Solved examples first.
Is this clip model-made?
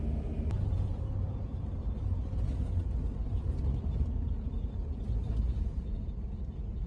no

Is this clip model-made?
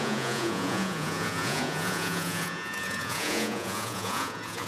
yes